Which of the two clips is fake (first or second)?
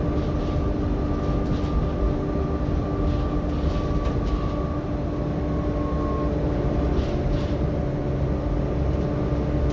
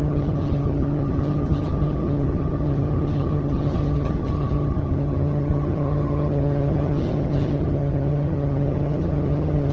second